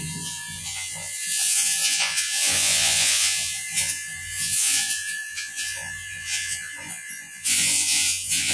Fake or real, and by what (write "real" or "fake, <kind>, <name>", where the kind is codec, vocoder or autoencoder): fake, vocoder, Vocos